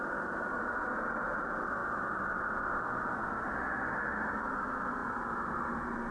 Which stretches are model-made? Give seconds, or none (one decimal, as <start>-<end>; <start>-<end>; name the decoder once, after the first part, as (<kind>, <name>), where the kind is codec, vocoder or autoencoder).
none